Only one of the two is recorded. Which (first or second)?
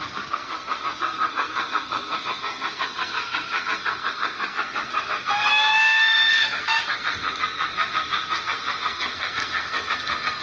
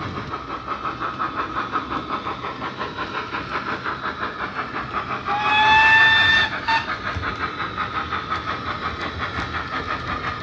second